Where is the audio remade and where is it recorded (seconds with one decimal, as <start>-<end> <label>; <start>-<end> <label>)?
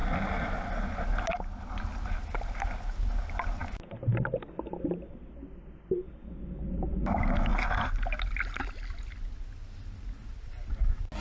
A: 0.0-11.2 recorded